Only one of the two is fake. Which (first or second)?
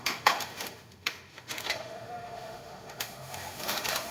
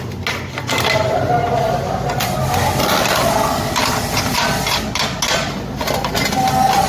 first